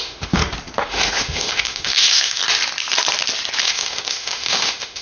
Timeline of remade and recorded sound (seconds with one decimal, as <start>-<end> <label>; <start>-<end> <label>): 0.0-0.4 remade; 0.4-0.9 recorded; 0.9-2.4 remade; 2.4-3.6 recorded; 3.6-5.0 remade